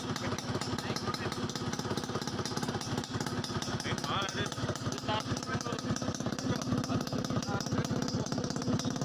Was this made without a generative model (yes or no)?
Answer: yes